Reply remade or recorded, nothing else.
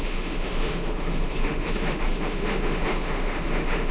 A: remade